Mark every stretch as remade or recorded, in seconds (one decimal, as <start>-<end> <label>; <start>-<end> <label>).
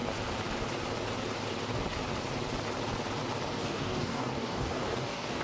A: 0.0-3.6 recorded; 3.6-5.4 remade